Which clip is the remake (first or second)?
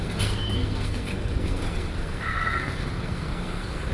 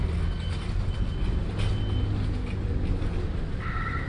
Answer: first